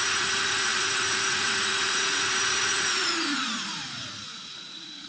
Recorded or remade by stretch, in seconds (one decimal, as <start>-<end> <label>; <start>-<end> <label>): 0.0-5.1 remade